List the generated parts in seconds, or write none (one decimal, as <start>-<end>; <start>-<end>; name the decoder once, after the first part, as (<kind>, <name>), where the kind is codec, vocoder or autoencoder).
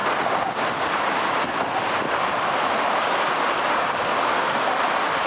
3.2-4.4 (codec, DAC)